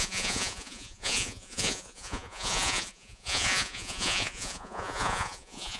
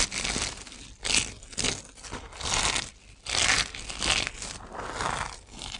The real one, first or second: second